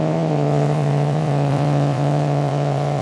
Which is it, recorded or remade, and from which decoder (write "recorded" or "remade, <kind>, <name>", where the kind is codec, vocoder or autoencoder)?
remade, vocoder, Vocos